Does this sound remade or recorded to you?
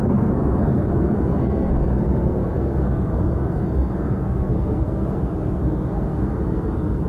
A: remade